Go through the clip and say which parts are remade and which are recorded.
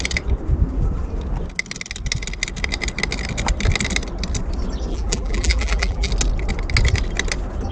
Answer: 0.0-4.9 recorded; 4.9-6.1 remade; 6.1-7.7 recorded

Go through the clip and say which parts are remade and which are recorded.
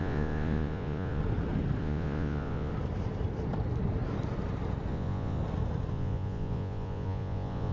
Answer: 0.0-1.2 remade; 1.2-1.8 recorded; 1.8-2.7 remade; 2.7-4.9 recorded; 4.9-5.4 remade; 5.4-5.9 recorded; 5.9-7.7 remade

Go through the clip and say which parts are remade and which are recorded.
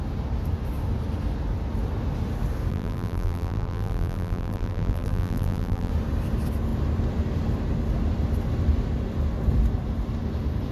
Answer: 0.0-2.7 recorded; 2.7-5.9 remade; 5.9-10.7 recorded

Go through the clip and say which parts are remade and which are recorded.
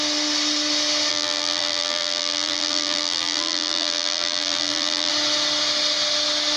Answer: 0.0-1.1 recorded; 1.1-5.1 remade; 5.1-6.6 recorded